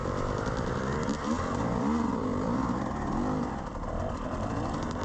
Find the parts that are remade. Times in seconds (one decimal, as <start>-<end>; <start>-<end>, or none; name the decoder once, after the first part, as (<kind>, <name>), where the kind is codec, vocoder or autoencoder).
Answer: 0.0-5.0 (vocoder, BigVGAN v2)